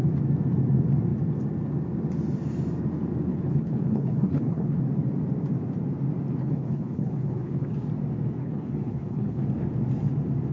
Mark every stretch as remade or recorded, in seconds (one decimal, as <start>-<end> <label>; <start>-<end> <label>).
0.0-3.3 recorded; 3.3-4.8 remade; 4.8-6.4 recorded; 6.4-7.7 remade; 7.7-8.4 recorded; 8.4-9.4 remade; 9.4-10.5 recorded